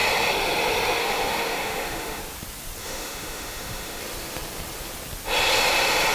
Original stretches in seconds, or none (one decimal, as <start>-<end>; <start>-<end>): 0.0-1.0; 2.2-2.8; 4.0-6.1